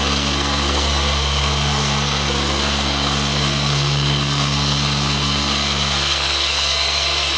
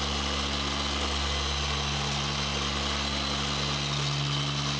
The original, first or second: second